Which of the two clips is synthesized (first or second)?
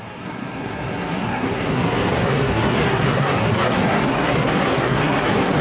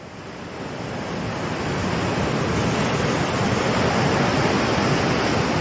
first